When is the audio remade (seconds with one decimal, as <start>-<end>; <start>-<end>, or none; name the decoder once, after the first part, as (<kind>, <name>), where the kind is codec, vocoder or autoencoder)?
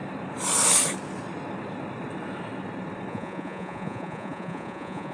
3.1-5.1 (vocoder, Vocos)